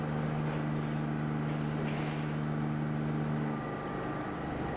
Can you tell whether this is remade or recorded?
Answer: recorded